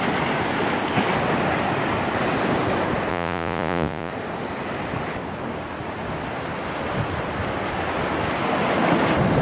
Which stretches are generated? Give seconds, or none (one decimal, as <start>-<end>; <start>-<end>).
3.1-4.1